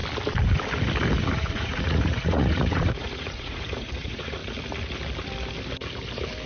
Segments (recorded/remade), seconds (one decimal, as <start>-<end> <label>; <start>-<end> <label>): 0.0-1.2 recorded; 1.2-4.4 remade; 4.4-6.5 recorded